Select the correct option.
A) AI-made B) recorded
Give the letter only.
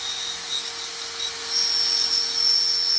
B